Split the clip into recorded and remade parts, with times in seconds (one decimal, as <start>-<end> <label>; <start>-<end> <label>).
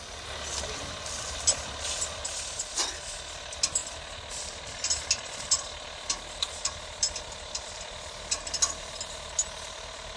0.0-10.2 recorded